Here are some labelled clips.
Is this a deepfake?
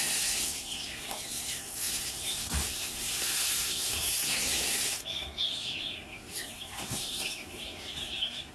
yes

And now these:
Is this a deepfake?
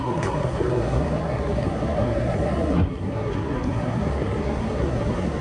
yes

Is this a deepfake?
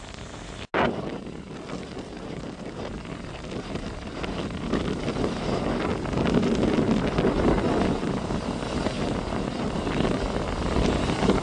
no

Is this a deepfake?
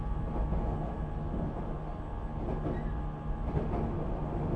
no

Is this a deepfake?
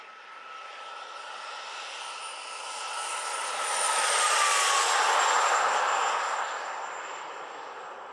no